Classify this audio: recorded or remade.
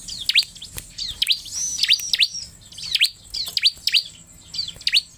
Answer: recorded